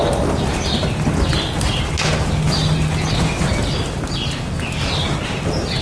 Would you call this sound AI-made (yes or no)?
no